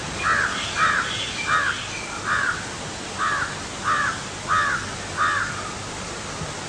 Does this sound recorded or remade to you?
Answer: recorded